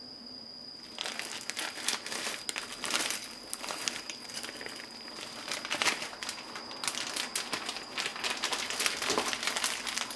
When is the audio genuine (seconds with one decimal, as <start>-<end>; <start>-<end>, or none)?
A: 0.0-10.2